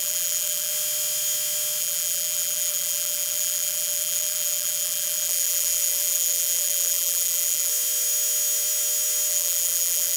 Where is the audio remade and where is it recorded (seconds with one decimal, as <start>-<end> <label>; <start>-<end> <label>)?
0.0-0.7 remade; 0.7-1.8 recorded; 1.8-7.7 remade; 7.7-9.3 recorded; 9.3-10.2 remade